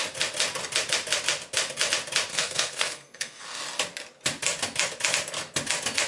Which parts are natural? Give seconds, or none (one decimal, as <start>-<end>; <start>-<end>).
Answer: 0.0-2.3; 3.6-6.1

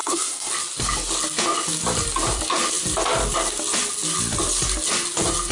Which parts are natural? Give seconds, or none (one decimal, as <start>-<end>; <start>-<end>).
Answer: 0.5-5.5

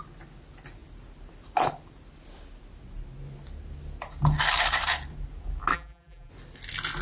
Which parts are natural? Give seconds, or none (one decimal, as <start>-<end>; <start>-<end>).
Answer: 0.0-5.7; 6.3-7.0

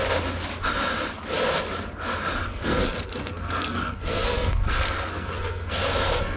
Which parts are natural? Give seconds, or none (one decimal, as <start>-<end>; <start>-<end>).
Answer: 0.0-2.5

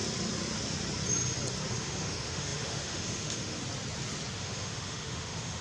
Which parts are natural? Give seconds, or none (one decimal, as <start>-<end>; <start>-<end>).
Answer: 0.0-1.7; 3.6-4.4

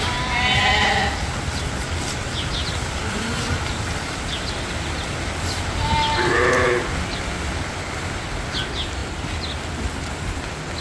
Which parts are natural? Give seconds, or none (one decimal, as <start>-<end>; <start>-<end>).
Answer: 0.0-10.8

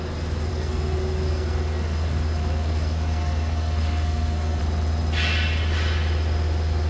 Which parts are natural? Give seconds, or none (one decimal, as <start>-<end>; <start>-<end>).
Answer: 0.0-0.5; 4.6-6.9

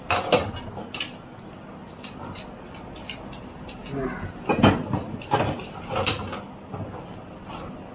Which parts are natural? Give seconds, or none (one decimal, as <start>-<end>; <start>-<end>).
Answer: 0.0-7.9